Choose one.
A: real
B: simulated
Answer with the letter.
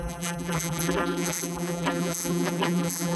B